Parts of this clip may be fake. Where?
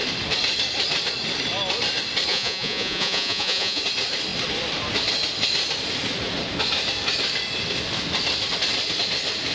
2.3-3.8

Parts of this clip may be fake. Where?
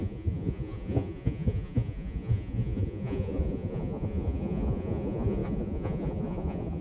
0.0-6.8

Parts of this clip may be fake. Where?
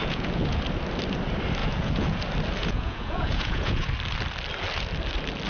0.0-0.6; 1.6-2.2; 2.6-3.9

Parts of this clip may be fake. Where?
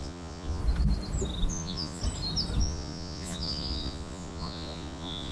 0.0-0.6; 1.5-2.0; 2.6-5.3